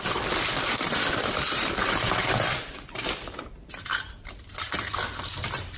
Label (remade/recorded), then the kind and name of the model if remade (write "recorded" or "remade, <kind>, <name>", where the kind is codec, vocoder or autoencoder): remade, vocoder, BigVGAN v2